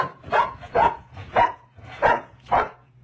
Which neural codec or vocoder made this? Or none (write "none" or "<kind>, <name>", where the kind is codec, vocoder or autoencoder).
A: vocoder, Vocos